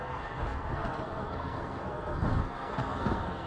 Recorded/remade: remade